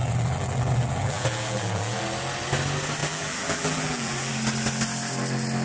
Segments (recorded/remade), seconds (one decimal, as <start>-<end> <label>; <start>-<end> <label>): 0.0-2.0 remade; 2.0-3.0 recorded; 3.0-4.3 remade; 4.3-5.6 recorded